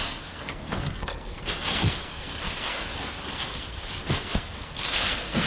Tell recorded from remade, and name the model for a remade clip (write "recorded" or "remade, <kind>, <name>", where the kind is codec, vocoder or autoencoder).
remade, codec, SNAC